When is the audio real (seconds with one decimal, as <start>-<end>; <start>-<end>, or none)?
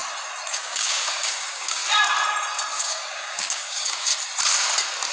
0.0-0.5; 1.8-2.7; 4.1-5.1